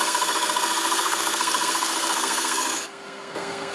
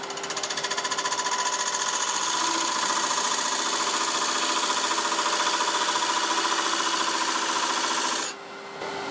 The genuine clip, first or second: second